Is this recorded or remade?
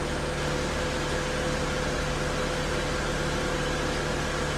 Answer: recorded